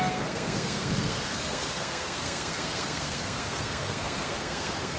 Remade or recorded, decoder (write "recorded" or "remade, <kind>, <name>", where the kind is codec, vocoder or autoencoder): remade, codec, SNAC